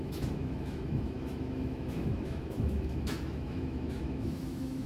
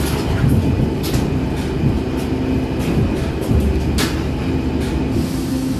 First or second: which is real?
second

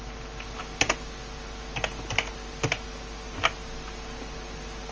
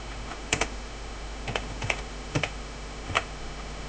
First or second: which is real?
first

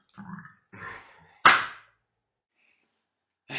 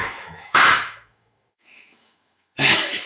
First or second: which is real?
first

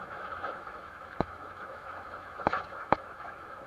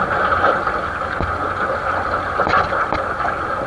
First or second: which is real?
second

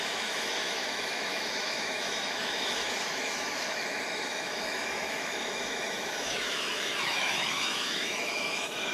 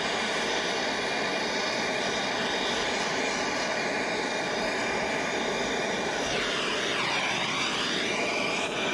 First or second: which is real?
second